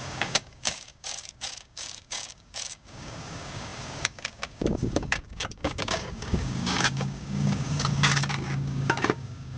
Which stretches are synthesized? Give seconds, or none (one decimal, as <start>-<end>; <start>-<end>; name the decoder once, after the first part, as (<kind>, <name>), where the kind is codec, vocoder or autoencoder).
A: 0.0-9.6 (codec, DAC)